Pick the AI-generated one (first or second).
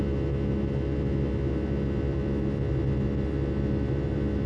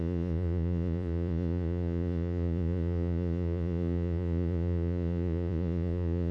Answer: second